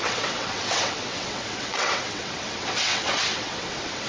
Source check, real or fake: fake